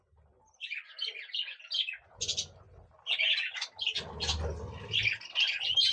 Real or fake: real